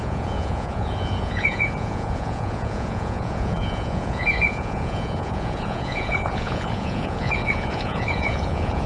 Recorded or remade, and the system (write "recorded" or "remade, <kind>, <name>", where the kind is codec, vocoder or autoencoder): remade, vocoder, Vocos